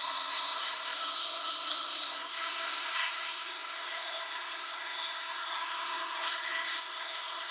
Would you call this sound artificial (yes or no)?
yes